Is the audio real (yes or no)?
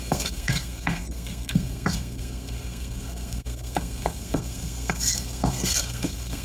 no